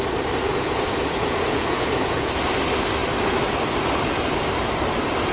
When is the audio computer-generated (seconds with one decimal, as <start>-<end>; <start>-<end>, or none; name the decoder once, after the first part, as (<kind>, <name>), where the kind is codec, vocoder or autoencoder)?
0.5-2.3 (vocoder, Vocos)